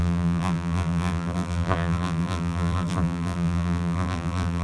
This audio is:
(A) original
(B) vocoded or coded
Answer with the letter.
B